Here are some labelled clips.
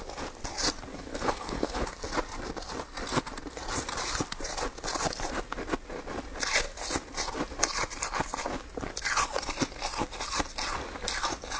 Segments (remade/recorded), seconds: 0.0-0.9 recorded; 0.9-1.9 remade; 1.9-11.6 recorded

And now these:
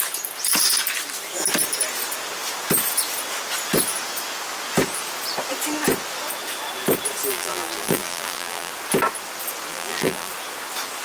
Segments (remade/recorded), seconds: 0.0-7.3 recorded; 7.3-8.7 remade; 8.7-9.7 recorded; 9.7-10.3 remade; 10.3-11.0 recorded

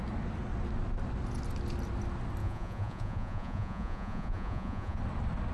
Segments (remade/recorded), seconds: 0.0-2.4 recorded; 2.4-5.0 remade; 5.0-5.5 recorded

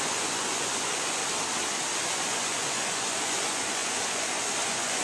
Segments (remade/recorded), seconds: 0.0-1.2 remade; 1.2-2.0 recorded; 2.0-5.0 remade